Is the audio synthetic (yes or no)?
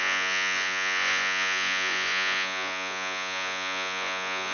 yes